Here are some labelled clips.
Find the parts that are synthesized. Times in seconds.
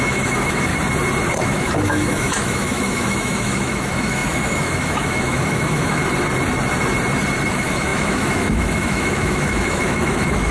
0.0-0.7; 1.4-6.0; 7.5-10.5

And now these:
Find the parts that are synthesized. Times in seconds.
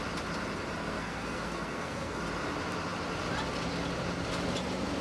0.8-2.2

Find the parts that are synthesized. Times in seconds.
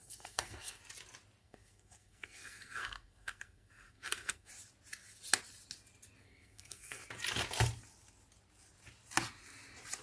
0.0-0.8; 1.4-4.5; 6.2-7.0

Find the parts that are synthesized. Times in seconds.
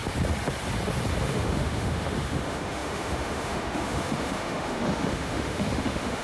1.2-6.2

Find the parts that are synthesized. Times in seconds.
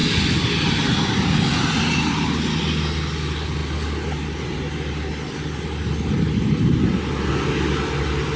none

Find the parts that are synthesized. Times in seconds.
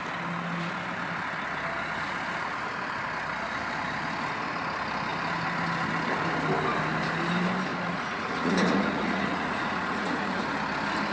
7.7-10.4